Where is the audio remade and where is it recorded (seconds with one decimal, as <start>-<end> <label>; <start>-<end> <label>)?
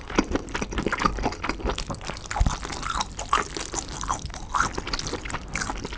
0.0-6.0 recorded